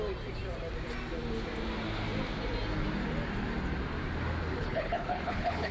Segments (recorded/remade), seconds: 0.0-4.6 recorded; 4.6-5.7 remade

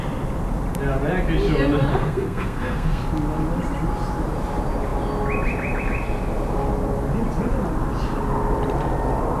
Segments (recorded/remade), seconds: 0.0-1.9 recorded; 1.9-3.0 remade; 3.0-9.4 recorded

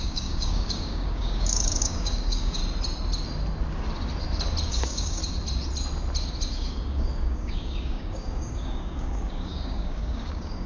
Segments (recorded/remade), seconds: 0.0-2.6 remade; 2.6-4.7 recorded; 4.7-5.2 remade; 5.2-6.5 recorded; 6.5-10.7 remade

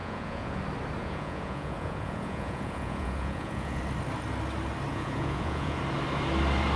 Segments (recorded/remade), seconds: 0.0-0.6 remade; 0.6-1.0 recorded; 1.0-3.8 remade; 3.8-4.9 recorded; 4.9-5.8 remade; 5.8-6.8 recorded

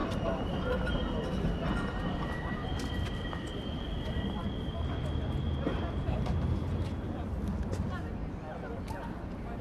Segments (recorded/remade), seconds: 0.0-9.6 recorded

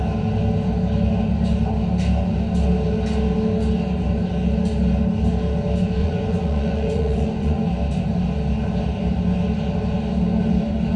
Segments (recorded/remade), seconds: 0.0-6.0 recorded; 6.0-7.7 remade; 7.7-11.0 recorded

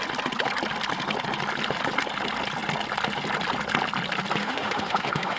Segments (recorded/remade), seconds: 0.0-4.4 recorded; 4.4-5.4 remade

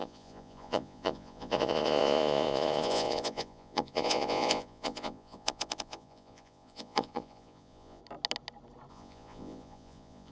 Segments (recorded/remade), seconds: 0.0-8.0 remade; 8.0-8.9 recorded; 8.9-10.3 remade